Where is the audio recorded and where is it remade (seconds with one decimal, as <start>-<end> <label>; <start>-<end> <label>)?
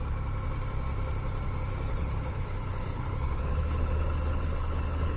0.0-1.9 recorded; 1.9-5.2 remade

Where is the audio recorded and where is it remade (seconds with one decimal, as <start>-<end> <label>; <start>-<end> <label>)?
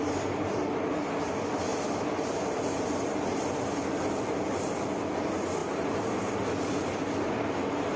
0.0-8.0 recorded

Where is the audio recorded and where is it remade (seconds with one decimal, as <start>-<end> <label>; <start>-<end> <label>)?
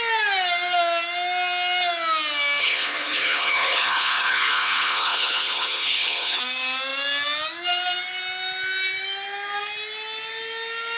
0.0-2.6 recorded; 2.6-6.4 remade; 6.4-11.0 recorded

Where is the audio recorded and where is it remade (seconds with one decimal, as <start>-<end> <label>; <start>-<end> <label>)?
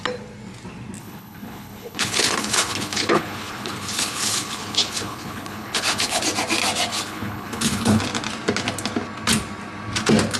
0.0-1.0 recorded; 1.0-6.2 remade; 6.2-6.9 recorded; 6.9-8.0 remade; 8.0-10.4 recorded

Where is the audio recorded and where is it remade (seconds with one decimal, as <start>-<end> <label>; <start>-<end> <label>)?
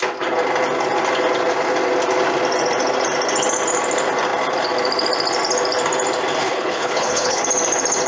0.0-6.4 recorded; 6.4-7.4 remade; 7.4-8.1 recorded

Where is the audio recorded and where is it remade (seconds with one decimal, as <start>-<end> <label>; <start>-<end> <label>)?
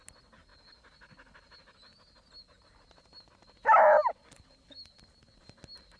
0.0-6.0 recorded